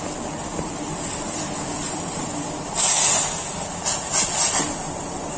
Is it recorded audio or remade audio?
recorded